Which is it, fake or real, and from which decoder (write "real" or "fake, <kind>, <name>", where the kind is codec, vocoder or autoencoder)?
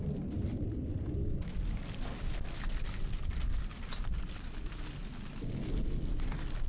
real